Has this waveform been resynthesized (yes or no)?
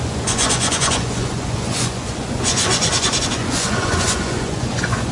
yes